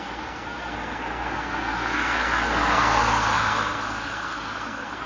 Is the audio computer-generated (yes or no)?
yes